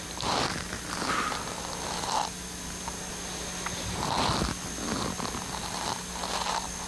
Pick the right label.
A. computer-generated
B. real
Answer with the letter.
B